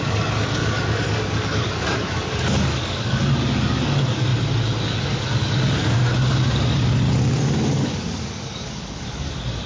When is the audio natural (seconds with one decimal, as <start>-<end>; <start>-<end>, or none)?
4.3-5.0; 6.0-7.7